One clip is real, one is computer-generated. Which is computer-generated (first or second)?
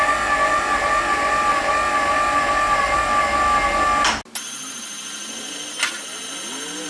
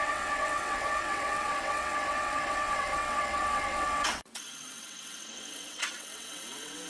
second